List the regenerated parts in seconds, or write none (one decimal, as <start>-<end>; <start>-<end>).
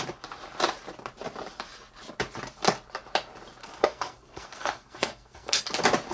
3.6-5.6